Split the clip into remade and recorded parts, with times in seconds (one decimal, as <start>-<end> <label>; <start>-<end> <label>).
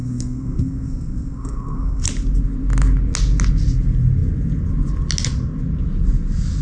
0.0-2.0 remade; 2.0-6.6 recorded